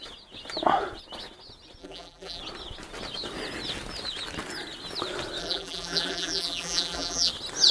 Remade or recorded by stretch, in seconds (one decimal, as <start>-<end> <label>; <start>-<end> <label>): 0.0-1.8 recorded; 1.8-2.4 remade; 2.4-5.4 recorded; 5.4-7.3 remade; 7.3-7.7 recorded